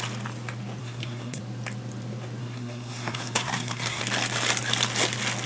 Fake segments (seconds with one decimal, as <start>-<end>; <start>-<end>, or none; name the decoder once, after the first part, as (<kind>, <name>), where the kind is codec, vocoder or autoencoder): 0.8-1.4 (codec, SNAC); 2.4-4.0